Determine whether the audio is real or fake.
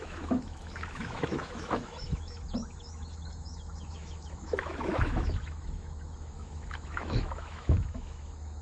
fake